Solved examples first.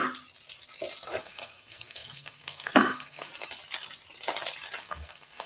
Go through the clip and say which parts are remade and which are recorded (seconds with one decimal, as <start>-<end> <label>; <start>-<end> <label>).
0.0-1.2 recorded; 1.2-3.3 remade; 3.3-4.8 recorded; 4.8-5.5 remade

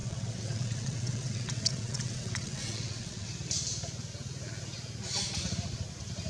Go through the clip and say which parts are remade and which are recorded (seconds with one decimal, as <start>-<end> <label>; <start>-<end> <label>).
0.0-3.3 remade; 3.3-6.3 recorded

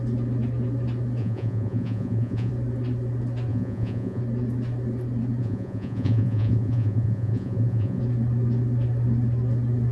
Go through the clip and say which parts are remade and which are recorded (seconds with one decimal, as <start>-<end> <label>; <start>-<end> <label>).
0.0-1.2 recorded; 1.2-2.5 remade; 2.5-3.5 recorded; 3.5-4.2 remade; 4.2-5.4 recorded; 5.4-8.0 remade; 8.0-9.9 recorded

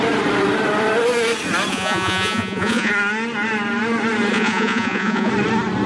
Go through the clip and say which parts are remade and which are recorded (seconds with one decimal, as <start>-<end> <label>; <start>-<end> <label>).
0.0-1.7 recorded; 1.7-2.9 remade; 2.9-4.3 recorded; 4.3-5.3 remade; 5.3-5.9 recorded

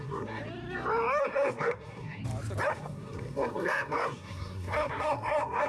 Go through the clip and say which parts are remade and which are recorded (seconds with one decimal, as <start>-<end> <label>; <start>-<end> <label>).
0.0-0.4 remade; 0.4-1.2 recorded; 1.2-2.2 remade; 2.2-2.7 recorded; 2.7-5.7 remade

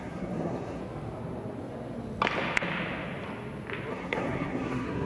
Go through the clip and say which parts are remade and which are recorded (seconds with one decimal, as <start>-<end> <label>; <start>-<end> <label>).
0.0-0.8 remade; 0.8-3.9 recorded; 3.9-5.1 remade